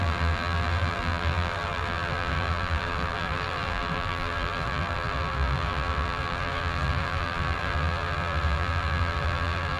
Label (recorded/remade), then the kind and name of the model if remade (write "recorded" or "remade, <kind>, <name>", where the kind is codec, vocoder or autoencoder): remade, vocoder, BigVGAN v2